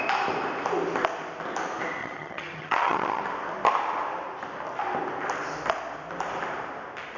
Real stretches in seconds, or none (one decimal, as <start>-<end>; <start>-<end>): 0.0-2.0; 3.2-7.2